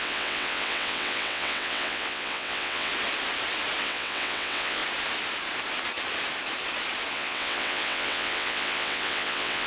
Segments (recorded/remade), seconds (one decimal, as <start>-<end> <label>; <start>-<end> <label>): 0.0-2.9 remade; 2.9-3.8 recorded; 3.8-4.8 remade; 4.8-7.1 recorded; 7.1-9.7 remade